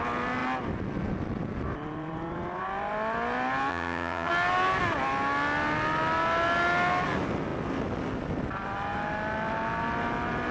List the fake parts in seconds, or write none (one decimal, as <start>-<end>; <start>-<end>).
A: 3.7-4.3

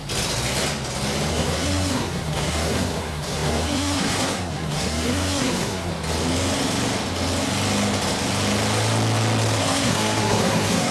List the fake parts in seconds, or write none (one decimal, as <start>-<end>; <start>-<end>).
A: 1.3-5.9; 9.6-10.9

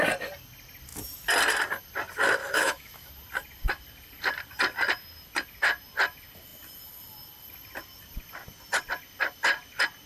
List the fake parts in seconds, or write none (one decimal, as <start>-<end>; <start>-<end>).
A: 2.4-3.1

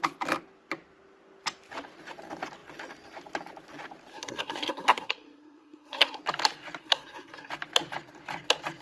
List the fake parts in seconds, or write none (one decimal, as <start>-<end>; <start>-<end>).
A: 4.1-6.2; 6.8-7.5

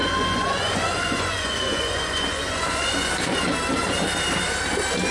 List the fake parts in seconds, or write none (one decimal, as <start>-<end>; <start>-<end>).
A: 0.0-3.1

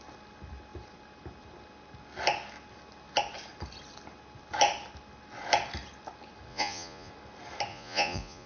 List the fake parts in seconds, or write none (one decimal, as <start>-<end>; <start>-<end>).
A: 6.5-7.1; 7.7-8.5